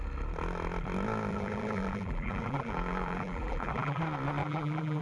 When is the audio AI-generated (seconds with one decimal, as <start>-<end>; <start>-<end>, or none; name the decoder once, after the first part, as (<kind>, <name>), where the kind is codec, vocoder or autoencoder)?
1.3-4.0 (vocoder, BigVGAN v2); 4.4-5.0